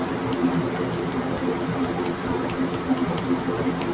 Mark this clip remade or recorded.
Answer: recorded